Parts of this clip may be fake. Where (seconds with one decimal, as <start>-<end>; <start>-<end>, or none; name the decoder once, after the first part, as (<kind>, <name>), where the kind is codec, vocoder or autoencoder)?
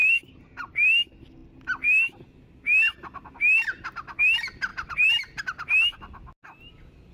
0.0-0.7 (vocoder, BigVGAN v2); 4.7-5.4